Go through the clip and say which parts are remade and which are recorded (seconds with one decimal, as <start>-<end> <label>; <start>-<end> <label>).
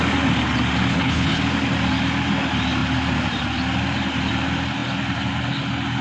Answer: 0.0-0.9 recorded; 0.9-1.4 remade; 1.4-6.0 recorded